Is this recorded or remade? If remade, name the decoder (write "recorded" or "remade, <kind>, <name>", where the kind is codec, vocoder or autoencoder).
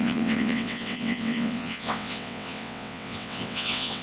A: remade, vocoder, WaveNeXt